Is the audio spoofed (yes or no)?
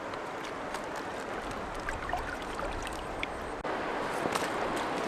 no